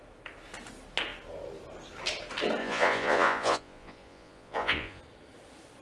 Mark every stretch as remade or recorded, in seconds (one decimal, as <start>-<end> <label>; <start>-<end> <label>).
0.0-2.6 recorded; 2.6-5.0 remade; 5.0-5.8 recorded